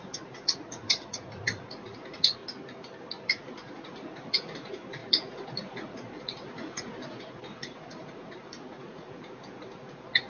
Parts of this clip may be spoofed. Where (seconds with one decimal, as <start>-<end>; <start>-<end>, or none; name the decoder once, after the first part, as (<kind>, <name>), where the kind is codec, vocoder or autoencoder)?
0.0-2.4 (vocoder, Vocos); 3.4-10.3